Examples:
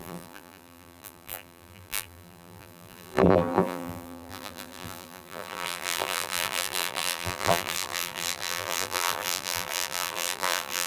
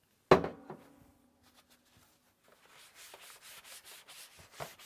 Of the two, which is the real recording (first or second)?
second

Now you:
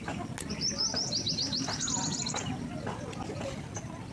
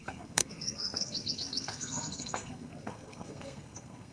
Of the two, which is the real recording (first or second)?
first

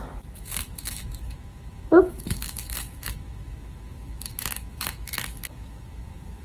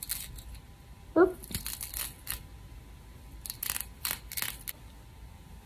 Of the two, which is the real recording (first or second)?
second